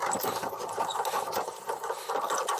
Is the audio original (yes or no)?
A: yes